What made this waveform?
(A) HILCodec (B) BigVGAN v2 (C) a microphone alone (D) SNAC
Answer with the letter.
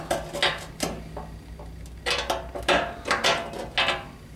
C